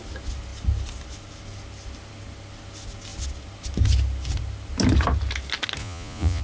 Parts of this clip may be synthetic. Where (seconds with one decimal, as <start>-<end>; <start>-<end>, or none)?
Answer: 5.8-6.4